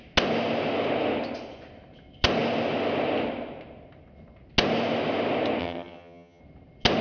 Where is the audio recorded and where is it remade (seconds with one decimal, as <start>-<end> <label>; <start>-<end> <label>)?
0.0-5.6 recorded; 5.6-6.4 remade; 6.4-7.0 recorded